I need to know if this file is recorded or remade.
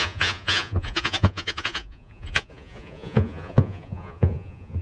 remade